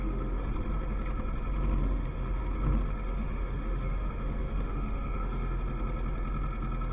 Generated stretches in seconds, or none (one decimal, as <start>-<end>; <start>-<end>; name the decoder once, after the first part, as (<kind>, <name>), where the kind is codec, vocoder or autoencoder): 0.0-0.5 (autoencoder, DAC-VAE); 1.8-2.4; 3.1-5.6